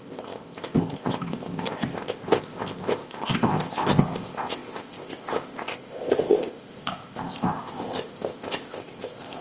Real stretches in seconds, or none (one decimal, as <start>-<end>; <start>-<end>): none